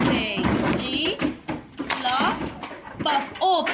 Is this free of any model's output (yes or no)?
yes